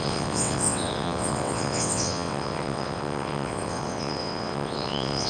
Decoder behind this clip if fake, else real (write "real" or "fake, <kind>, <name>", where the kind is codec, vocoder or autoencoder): fake, vocoder, WaveNeXt